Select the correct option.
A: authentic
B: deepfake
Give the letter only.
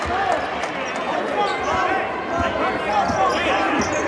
A